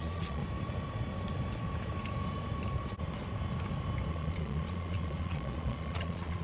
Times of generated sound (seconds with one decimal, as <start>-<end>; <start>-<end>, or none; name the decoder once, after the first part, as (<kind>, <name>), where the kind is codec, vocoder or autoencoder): 0.0-0.4 (vocoder, Vocos); 4.1-6.4